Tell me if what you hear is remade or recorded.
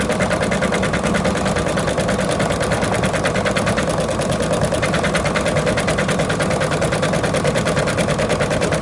recorded